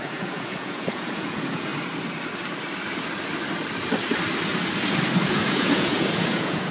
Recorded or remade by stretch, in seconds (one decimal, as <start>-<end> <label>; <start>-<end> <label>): 0.0-1.7 remade; 1.7-5.2 recorded; 5.2-6.7 remade